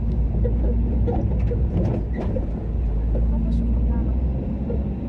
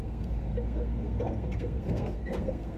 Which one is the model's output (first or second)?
second